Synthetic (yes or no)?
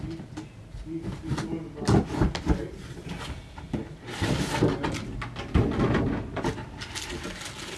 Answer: no